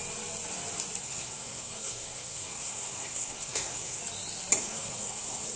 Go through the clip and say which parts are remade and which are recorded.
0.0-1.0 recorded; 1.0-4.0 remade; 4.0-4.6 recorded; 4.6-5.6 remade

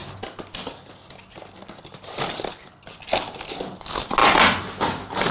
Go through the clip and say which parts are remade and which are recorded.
0.0-4.2 recorded; 4.2-4.8 remade; 4.8-5.3 recorded

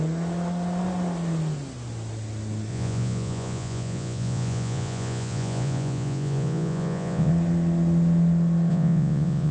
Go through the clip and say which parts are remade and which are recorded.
0.0-2.7 recorded; 2.7-7.3 remade; 7.3-8.7 recorded; 8.7-9.5 remade

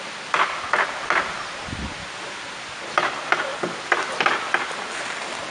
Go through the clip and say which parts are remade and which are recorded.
0.0-5.5 recorded

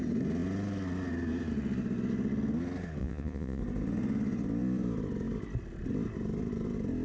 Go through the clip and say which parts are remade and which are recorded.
0.0-3.0 recorded; 3.0-3.6 remade; 3.6-7.0 recorded